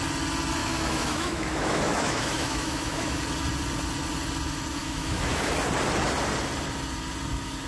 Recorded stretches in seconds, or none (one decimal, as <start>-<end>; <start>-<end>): 0.0-0.6; 3.2-4.8; 5.4-7.7